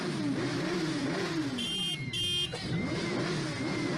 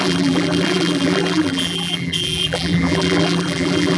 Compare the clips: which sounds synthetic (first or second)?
second